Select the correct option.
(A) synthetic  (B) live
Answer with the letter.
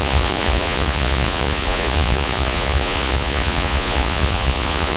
A